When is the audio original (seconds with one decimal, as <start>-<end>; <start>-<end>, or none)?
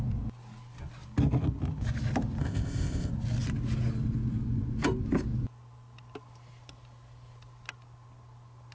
0.0-2.4; 3.1-8.7